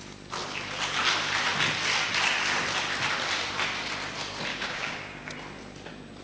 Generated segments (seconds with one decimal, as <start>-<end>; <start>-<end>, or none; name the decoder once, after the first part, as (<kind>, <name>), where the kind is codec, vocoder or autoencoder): 4.5-5.3 (codec, DAC)